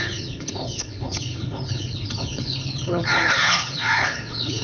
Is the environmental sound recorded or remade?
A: remade